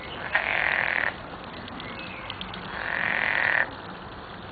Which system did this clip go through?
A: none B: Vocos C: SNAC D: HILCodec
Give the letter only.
A